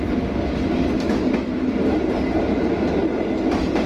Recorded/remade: recorded